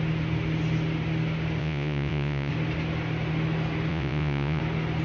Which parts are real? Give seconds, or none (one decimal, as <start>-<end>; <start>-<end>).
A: 0.0-1.6; 2.5-3.9; 4.6-5.0